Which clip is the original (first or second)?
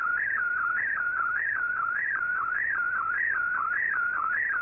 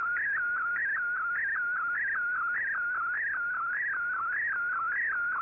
second